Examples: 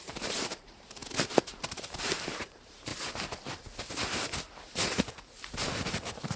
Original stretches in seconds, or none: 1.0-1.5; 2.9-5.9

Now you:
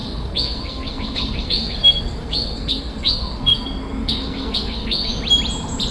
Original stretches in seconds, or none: 5.1-5.9

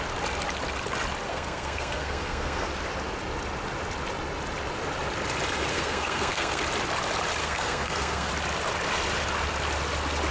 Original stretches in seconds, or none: 0.0-1.3; 2.7-5.7; 6.6-7.4; 8.3-10.3

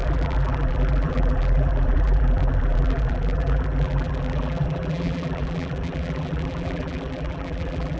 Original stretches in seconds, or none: none

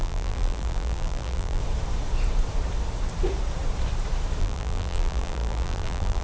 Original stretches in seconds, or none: 1.6-4.4

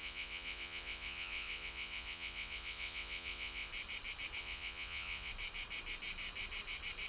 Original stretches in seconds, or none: 3.7-4.4; 5.3-7.1